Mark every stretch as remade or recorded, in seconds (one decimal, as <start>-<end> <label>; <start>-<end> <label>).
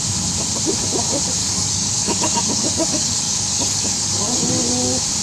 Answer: 0.0-1.4 recorded; 1.4-4.5 remade; 4.5-5.2 recorded